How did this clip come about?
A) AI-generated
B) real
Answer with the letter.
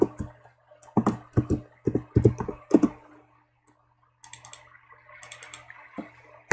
B